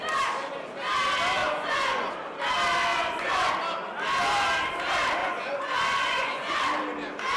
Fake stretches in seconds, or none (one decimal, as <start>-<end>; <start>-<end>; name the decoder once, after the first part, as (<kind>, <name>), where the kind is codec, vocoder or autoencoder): 1.4-2.1 (vocoder, Vocos); 2.9-3.5; 5.2-6.6